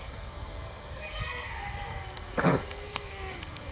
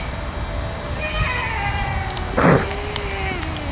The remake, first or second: first